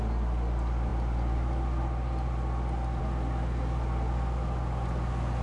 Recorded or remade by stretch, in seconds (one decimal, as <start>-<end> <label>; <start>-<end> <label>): 0.0-5.4 recorded